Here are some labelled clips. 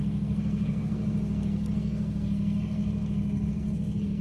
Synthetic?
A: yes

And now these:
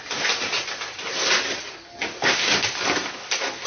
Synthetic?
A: no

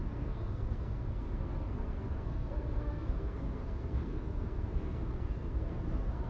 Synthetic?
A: yes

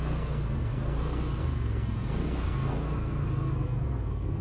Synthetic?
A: yes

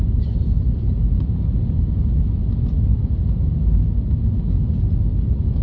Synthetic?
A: no